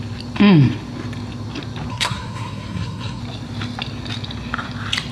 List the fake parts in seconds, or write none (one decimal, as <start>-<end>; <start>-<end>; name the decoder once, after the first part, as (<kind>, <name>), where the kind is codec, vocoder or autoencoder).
1.9-3.2 (codec, SNAC)